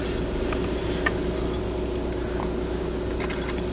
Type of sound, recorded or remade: recorded